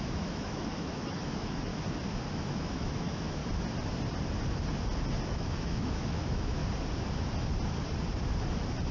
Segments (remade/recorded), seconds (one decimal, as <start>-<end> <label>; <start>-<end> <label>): 0.0-1.7 remade; 1.7-2.3 recorded; 2.3-3.4 remade; 3.4-5.3 recorded; 5.3-6.6 remade; 6.6-8.9 recorded